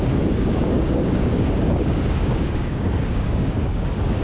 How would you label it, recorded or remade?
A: remade